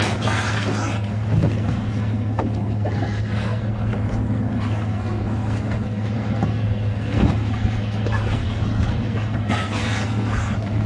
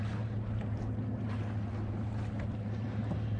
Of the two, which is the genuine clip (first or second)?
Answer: second